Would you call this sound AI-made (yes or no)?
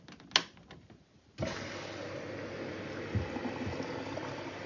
no